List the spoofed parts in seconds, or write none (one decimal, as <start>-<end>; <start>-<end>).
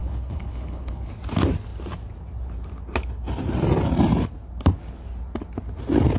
0.0-1.1